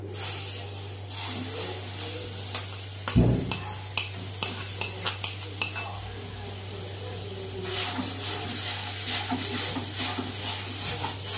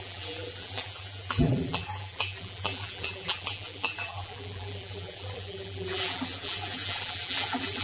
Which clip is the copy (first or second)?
second